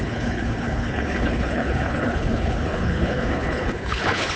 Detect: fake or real fake